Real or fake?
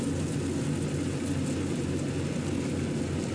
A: real